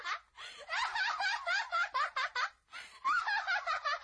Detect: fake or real real